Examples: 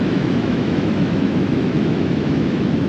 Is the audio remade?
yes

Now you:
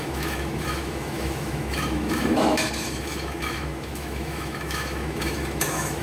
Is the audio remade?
yes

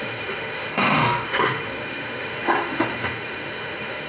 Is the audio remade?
yes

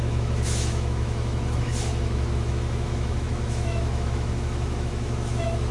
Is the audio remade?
yes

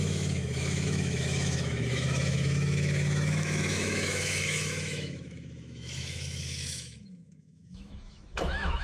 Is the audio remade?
yes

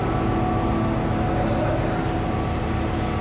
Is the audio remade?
no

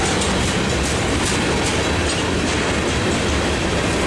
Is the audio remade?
no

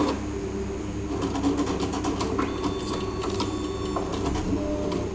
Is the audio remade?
no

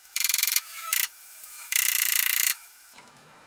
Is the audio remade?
yes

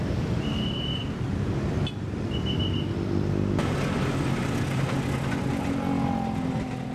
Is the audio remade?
no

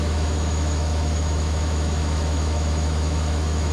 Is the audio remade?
yes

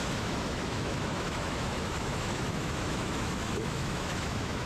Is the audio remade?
yes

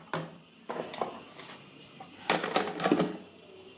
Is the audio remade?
no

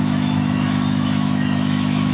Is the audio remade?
yes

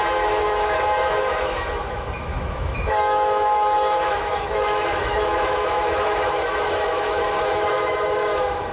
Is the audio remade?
yes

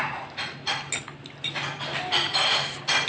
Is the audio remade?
no